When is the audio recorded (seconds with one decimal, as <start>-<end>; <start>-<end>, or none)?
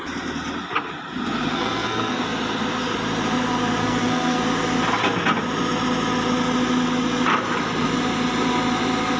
0.0-1.5; 2.2-3.8; 4.4-9.2